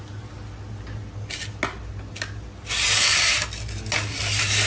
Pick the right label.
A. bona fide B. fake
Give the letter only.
A